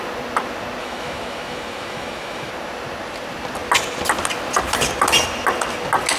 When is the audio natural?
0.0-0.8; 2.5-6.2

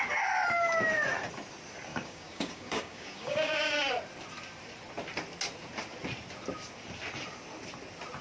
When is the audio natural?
0.0-1.9; 3.9-8.2

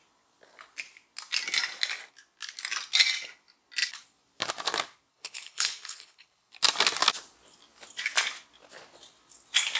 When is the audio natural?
0.0-5.1; 6.5-9.8

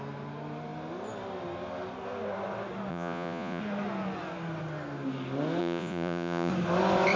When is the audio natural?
0.0-2.9; 3.6-5.6; 6.5-7.2

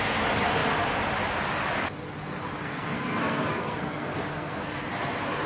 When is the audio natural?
0.0-2.6; 4.6-5.5

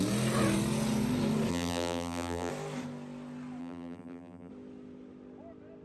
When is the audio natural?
0.0-1.5; 2.5-3.6; 4.5-5.8

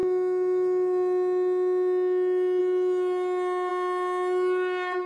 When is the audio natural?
0.0-5.1

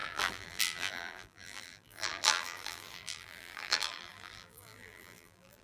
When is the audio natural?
none